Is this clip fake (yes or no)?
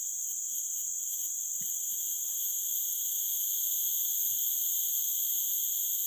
no